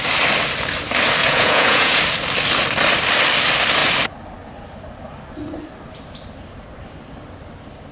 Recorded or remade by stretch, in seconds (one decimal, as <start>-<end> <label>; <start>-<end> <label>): 0.0-1.2 recorded; 1.2-2.0 remade; 2.0-7.9 recorded